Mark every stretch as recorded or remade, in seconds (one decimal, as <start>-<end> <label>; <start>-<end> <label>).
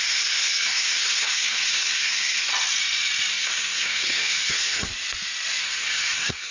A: 0.0-2.5 remade; 2.5-3.3 recorded; 3.3-4.9 remade; 4.9-5.6 recorded; 5.6-6.5 remade